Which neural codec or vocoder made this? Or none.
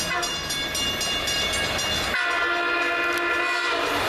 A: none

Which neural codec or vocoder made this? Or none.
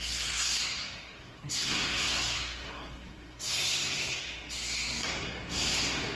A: codec, SNAC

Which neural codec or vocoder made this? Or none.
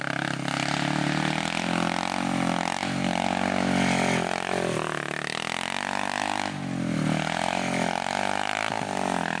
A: none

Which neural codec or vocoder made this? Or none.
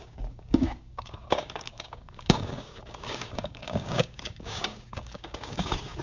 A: codec, DAC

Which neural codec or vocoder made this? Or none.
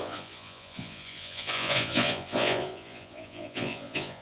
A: vocoder, Vocos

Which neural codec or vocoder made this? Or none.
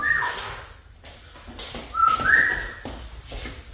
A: none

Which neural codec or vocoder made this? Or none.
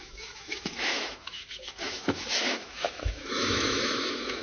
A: autoencoder, DAC-VAE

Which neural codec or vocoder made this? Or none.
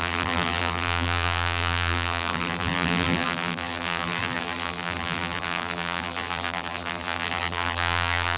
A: vocoder, BigVGAN v2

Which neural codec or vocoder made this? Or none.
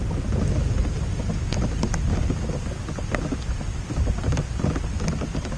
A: none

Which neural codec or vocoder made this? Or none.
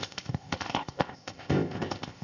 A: codec, ZipCodec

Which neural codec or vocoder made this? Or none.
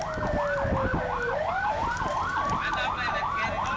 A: none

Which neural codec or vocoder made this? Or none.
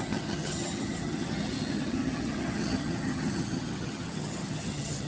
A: vocoder, HiFi-GAN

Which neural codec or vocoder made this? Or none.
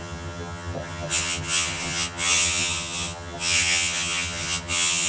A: vocoder, HiFi-GAN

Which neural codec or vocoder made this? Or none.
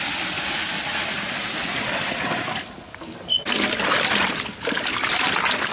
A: none